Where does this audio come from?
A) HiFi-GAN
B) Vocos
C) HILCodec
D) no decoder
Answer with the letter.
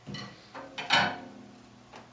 D